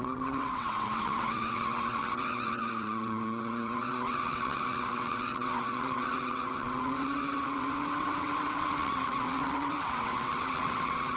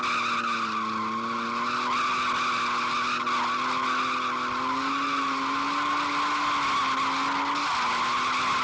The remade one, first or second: first